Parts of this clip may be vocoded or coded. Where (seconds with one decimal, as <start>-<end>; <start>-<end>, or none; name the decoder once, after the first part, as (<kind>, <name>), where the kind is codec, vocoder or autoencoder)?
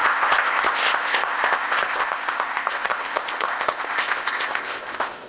0.0-5.3 (codec, ZipCodec)